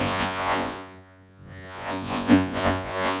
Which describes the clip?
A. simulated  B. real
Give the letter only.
A